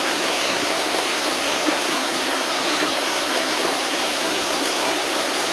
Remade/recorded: remade